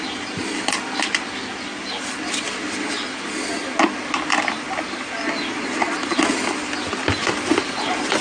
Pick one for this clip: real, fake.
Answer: real